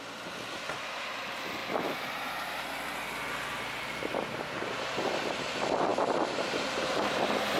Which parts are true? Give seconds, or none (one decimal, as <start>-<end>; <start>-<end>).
0.0-1.6; 2.6-7.6